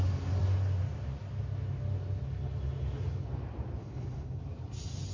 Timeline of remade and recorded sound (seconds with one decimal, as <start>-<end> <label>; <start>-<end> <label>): 0.0-3.8 recorded; 3.8-4.4 remade; 4.4-5.1 recorded